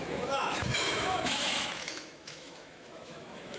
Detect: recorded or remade remade